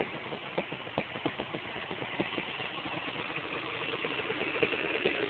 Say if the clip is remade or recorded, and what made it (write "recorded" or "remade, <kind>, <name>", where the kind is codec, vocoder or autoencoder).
remade, vocoder, Vocos